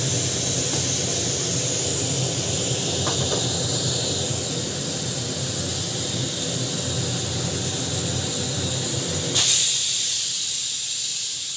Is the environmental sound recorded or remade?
recorded